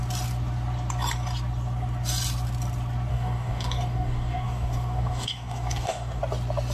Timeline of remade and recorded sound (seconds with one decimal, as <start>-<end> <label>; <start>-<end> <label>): 0.0-3.1 recorded; 3.1-6.2 remade; 6.2-6.7 recorded

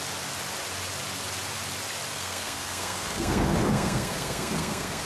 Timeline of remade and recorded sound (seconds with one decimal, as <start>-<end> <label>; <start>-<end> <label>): 0.0-2.1 recorded; 2.1-5.1 remade

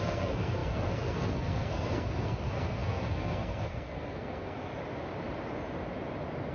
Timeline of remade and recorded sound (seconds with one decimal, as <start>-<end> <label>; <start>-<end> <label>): 0.0-4.7 remade; 4.7-6.5 recorded

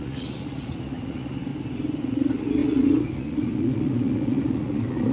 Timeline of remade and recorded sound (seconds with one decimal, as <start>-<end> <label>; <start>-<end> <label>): 0.0-1.5 remade; 1.5-2.0 recorded; 2.0-5.1 remade

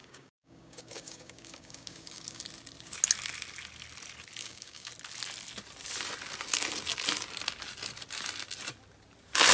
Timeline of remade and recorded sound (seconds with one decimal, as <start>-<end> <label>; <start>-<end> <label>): 0.0-2.4 remade; 2.4-4.4 recorded; 4.4-4.9 remade; 4.9-9.5 recorded